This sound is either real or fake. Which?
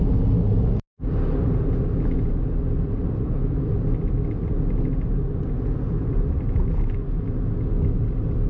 real